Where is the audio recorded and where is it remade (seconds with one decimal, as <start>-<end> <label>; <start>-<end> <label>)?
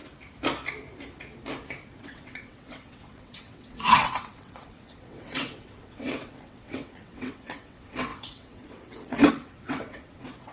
0.0-2.0 recorded; 2.0-10.5 remade